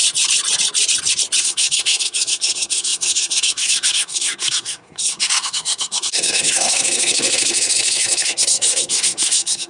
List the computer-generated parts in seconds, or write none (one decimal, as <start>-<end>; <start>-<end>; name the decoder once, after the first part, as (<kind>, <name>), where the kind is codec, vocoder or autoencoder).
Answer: 1.4-9.7 (codec, SNAC)